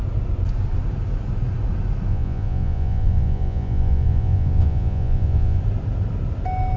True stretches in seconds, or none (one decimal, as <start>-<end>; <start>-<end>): 0.0-2.1; 5.6-6.8